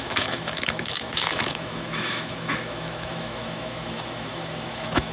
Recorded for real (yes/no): no